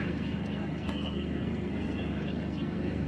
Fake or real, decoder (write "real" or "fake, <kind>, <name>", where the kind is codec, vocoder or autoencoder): fake, codec, SNAC